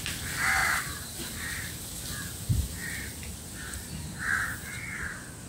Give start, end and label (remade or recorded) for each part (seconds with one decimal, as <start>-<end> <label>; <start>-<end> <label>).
0.0-5.5 recorded